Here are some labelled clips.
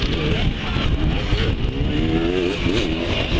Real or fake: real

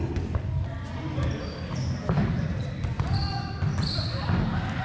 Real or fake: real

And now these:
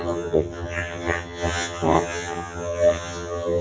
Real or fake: fake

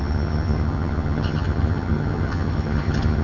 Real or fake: fake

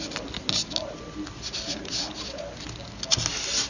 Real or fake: real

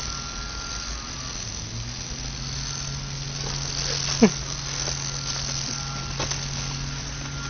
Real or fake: real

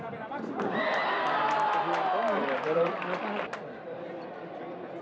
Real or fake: real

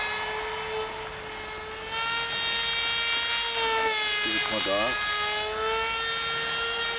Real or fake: real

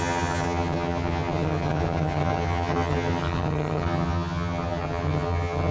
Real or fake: fake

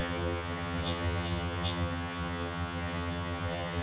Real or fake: fake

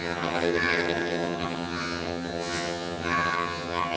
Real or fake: fake